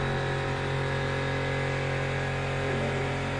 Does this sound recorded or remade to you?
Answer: recorded